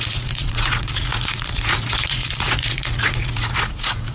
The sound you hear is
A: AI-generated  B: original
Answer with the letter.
A